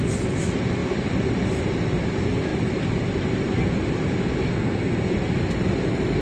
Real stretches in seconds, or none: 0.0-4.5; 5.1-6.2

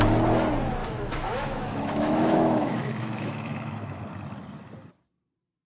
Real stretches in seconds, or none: 0.0-0.8; 4.0-5.6

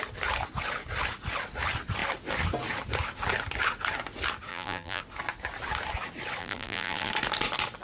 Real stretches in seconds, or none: 0.0-4.5; 5.0-6.4; 7.1-7.8